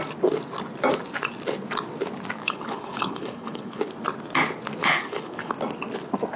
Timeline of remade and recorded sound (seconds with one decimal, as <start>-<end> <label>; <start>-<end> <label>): 0.0-2.4 recorded; 2.4-3.8 remade; 3.8-4.8 recorded; 4.8-5.5 remade; 5.5-6.4 recorded